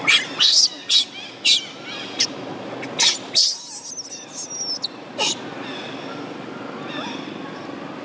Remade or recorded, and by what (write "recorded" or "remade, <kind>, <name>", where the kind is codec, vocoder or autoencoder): recorded